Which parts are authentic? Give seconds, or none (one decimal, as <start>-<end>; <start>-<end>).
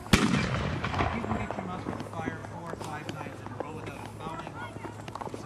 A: 0.0-5.5